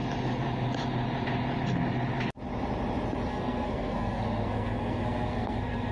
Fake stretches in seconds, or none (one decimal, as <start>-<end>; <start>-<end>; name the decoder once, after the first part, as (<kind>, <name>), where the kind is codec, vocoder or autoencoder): 3.3-5.9 (codec, SNAC)